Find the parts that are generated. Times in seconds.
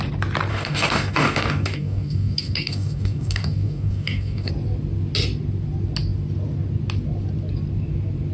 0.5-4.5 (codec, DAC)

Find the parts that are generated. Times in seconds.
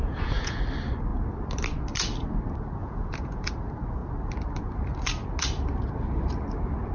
0.0-0.6 (vocoder, Vocos); 2.8-3.5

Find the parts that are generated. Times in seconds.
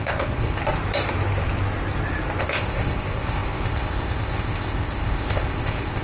0.0-0.6 (codec, ZipCodec); 2.4-6.0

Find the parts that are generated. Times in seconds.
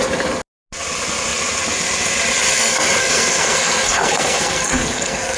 2.5-5.4 (codec, SNAC)